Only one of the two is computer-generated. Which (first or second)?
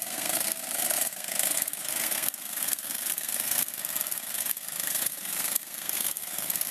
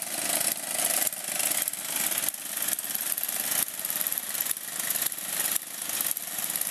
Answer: first